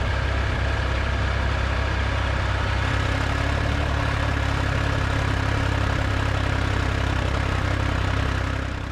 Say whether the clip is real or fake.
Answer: real